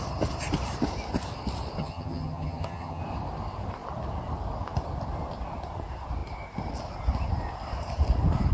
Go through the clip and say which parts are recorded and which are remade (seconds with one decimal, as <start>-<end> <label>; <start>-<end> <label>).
0.0-1.8 recorded; 1.8-3.0 remade; 3.0-8.5 recorded